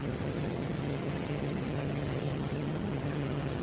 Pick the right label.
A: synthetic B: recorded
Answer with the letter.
A